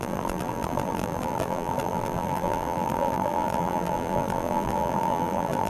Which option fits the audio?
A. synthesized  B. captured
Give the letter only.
A